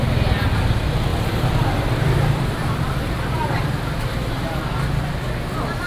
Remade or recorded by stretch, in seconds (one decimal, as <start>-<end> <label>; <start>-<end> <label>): 0.0-1.1 recorded; 1.1-4.6 remade; 4.6-5.9 recorded